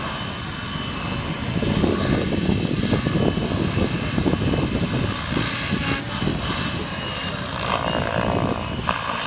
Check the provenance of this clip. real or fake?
real